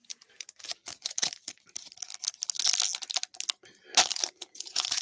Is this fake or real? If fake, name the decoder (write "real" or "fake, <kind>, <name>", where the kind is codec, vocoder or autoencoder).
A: real